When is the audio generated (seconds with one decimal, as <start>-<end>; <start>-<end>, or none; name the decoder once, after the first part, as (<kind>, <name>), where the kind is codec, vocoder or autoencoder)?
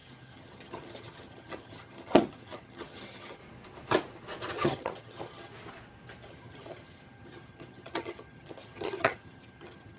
0.0-3.4 (vocoder, HiFi-GAN); 4.5-5.5; 6.3-10.0